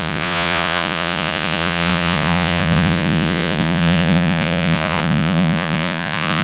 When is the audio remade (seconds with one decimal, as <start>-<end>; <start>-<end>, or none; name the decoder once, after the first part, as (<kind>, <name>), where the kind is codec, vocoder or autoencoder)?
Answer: 0.0-6.4 (vocoder, Vocos)